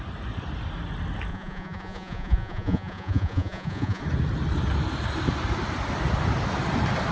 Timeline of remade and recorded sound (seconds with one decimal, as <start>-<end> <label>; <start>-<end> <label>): 0.0-1.3 recorded; 1.3-4.0 remade; 4.0-7.1 recorded